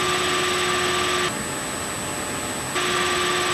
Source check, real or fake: real